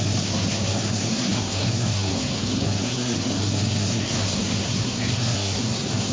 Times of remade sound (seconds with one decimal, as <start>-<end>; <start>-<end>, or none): 0.0-6.1